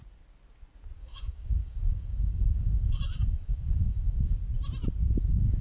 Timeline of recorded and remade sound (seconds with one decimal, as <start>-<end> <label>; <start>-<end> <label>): 0.0-1.0 recorded; 1.0-4.4 remade; 4.4-5.0 recorded; 5.0-5.6 remade